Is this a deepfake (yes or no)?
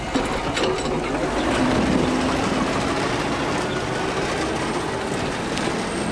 no